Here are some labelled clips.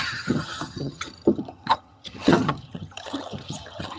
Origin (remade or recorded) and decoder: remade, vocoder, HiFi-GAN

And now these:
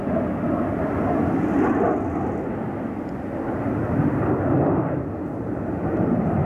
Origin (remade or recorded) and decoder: recorded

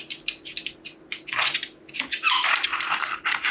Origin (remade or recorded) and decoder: recorded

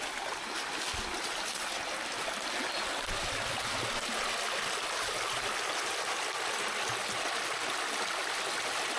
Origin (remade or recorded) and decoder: recorded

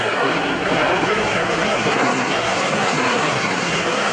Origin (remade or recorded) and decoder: remade, codec, SNAC